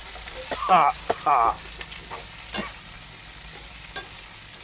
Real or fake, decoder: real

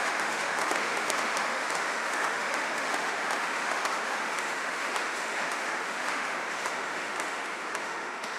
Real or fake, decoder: fake, autoencoder, DAC-VAE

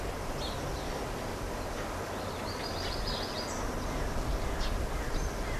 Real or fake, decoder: real